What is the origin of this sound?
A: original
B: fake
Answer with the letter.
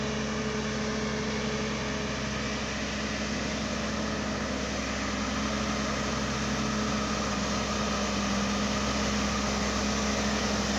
A